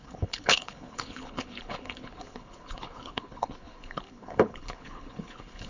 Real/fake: fake